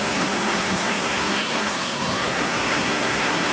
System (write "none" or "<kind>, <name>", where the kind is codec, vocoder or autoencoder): codec, SNAC